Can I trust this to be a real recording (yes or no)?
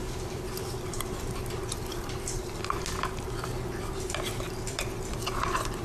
yes